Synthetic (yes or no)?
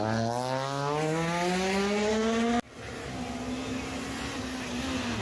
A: no